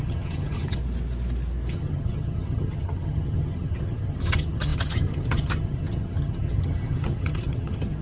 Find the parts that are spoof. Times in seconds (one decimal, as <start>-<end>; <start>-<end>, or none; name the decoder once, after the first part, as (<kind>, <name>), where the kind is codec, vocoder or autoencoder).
0.0-0.8 (vocoder, HiFi-GAN); 1.7-8.0